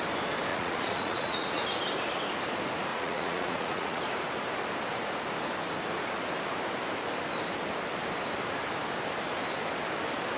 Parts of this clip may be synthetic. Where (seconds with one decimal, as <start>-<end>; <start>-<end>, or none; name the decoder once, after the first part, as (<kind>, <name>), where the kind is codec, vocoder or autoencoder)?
0.5-1.6 (vocoder, Vocos); 2.9-4.0

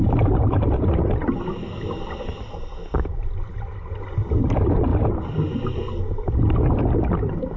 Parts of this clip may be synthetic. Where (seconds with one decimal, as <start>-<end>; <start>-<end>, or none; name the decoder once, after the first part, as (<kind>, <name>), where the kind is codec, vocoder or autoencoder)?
none

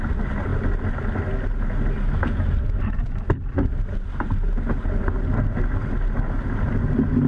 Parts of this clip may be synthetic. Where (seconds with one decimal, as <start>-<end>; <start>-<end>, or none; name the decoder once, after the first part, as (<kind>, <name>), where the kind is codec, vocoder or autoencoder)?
none

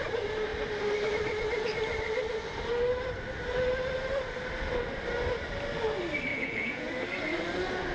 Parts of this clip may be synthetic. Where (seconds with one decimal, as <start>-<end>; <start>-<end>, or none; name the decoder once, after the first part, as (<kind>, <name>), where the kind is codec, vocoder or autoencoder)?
6.3-6.9 (vocoder, Vocos)

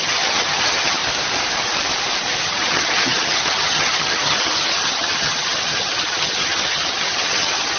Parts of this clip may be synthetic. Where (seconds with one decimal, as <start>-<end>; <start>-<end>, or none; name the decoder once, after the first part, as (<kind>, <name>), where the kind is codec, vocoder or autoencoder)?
0.0-1.0 (vocoder, HiFi-GAN); 2.4-7.8

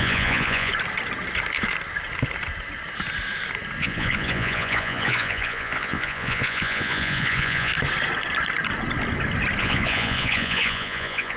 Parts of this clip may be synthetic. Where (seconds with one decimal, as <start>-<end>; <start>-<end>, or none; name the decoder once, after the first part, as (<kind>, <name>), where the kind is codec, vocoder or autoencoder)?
0.0-0.7 (vocoder, Vocos); 3.8-7.7; 9.6-11.4

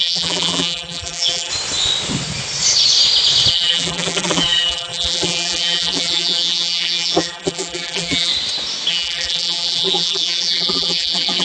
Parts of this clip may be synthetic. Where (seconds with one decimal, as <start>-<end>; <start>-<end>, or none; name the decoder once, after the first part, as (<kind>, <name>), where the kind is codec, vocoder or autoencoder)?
0.0-1.5 (vocoder, BigVGAN v2); 3.5-8.3; 8.9-11.4